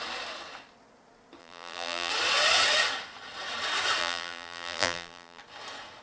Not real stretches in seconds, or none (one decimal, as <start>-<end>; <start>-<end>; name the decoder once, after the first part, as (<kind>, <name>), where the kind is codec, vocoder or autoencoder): 1.4-2.1 (vocoder, BigVGAN v2); 4.0-5.4